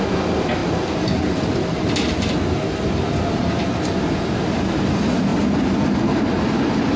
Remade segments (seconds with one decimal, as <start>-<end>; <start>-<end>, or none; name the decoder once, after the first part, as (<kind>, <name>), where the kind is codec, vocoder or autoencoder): none